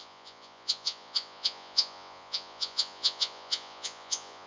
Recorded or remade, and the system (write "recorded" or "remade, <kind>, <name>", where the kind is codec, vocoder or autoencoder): remade, vocoder, Vocos